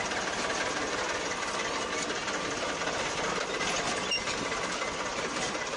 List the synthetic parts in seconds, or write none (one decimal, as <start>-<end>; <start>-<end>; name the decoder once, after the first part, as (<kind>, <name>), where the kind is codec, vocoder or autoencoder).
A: none